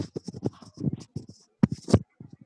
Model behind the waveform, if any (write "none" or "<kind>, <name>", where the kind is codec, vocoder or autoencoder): none